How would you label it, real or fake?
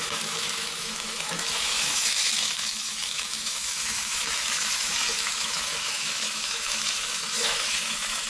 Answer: fake